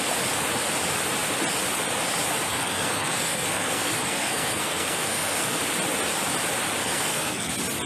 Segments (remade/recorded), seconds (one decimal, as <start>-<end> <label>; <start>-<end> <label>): 0.0-2.5 recorded; 2.5-5.6 remade; 5.6-6.8 recorded; 6.8-7.5 remade; 7.5-7.9 recorded